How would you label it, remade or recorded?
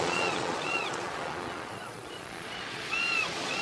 remade